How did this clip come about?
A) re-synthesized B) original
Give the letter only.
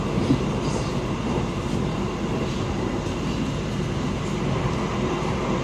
B